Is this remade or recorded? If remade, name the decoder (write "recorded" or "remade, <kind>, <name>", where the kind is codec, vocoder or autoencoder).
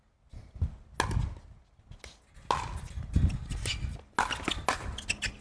recorded